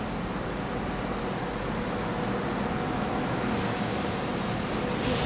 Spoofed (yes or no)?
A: no